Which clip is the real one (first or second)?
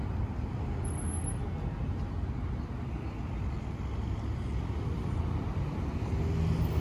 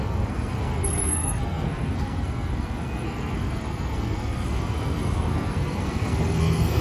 first